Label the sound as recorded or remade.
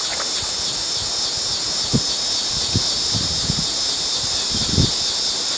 recorded